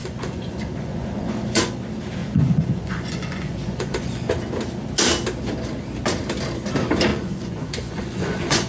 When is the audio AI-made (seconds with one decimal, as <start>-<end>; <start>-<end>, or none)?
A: 0.0-1.8; 2.2-4.3; 7.1-8.7